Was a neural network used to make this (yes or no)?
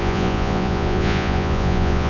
yes